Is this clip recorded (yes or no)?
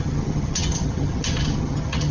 no